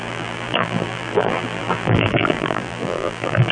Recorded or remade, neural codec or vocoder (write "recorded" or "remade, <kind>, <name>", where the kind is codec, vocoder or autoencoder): remade, vocoder, BigVGAN v2